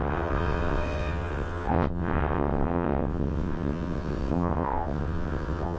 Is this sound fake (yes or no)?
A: yes